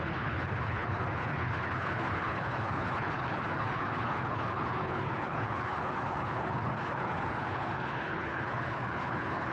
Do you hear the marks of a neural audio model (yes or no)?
yes